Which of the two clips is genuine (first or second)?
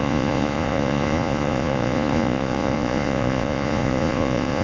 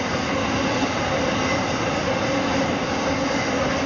second